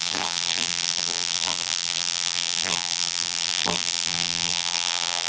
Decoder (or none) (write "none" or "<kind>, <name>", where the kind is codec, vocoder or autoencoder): vocoder, BigVGAN v2